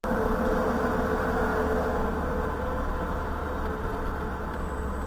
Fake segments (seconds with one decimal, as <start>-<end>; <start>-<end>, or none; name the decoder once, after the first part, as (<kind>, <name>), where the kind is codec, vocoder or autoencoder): none